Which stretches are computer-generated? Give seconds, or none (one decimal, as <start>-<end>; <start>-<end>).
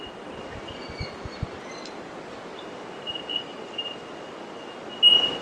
none